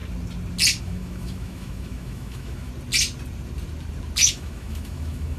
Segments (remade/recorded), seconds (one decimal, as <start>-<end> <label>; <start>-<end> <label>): 0.0-0.8 recorded; 0.8-2.7 remade; 2.7-4.3 recorded; 4.3-5.4 remade